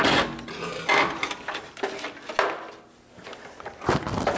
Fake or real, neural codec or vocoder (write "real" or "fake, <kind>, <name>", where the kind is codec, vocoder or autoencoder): real